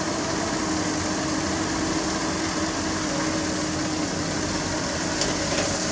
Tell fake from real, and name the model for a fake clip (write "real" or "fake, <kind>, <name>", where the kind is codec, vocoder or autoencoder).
real